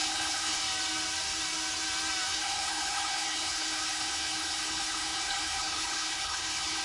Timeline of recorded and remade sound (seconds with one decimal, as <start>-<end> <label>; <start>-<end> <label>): 0.0-0.6 remade; 0.6-2.3 recorded; 2.3-6.8 remade